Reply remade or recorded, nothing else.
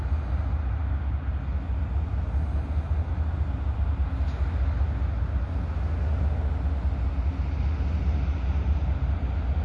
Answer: recorded